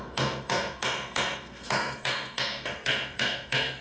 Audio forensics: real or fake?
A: fake